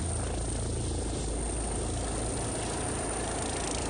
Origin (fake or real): real